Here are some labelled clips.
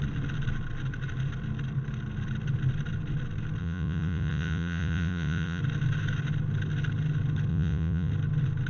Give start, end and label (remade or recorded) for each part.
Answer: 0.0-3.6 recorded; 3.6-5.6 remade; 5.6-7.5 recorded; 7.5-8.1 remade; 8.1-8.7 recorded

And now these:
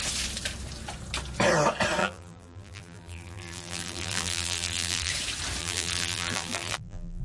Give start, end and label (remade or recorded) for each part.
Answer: 0.0-2.0 recorded; 2.0-5.1 remade; 5.1-5.6 recorded; 5.6-7.2 remade

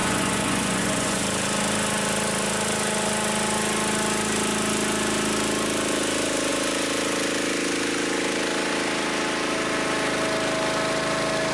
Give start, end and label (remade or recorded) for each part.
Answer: 0.0-1.2 remade; 1.2-11.5 recorded

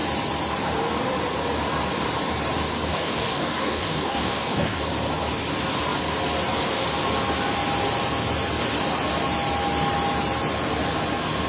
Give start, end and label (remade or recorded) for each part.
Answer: 0.0-2.9 recorded; 2.9-4.8 remade; 4.8-11.5 recorded

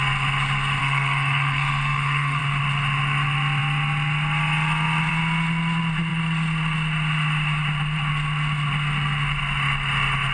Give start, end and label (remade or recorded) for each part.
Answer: 0.0-0.8 recorded; 0.8-2.4 remade; 2.4-10.3 recorded

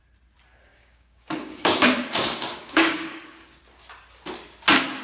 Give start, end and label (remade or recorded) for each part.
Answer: 0.0-0.7 recorded; 0.7-3.6 remade; 3.6-5.0 recorded